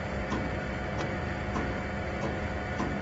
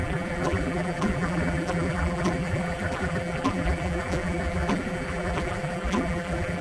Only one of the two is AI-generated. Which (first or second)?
second